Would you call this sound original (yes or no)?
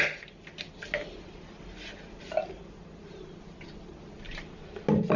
yes